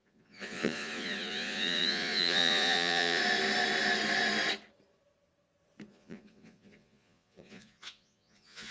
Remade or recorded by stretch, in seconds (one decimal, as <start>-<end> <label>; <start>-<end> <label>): 0.0-3.2 remade; 3.2-5.9 recorded; 5.9-8.7 remade